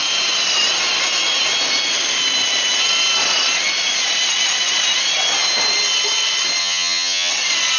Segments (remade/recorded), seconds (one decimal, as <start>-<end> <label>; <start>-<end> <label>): 0.0-6.6 recorded; 6.6-7.3 remade; 7.3-7.8 recorded